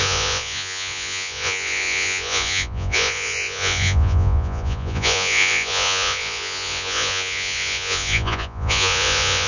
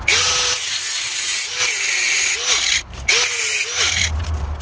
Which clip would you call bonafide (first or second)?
second